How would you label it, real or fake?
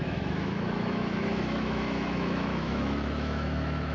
fake